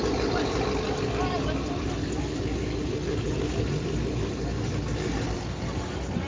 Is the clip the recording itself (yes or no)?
yes